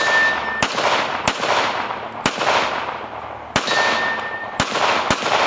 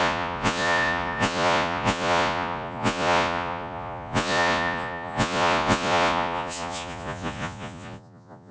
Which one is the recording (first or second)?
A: first